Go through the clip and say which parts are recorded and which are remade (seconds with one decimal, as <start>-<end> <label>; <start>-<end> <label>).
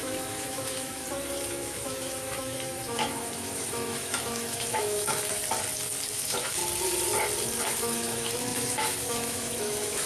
0.0-1.0 remade; 1.0-1.5 recorded; 1.5-5.4 remade; 5.4-6.1 recorded; 6.1-6.6 remade; 6.6-7.6 recorded; 7.6-10.1 remade